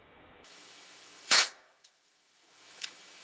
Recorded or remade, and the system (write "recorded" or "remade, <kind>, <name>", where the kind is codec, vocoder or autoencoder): remade, autoencoder, DAC-VAE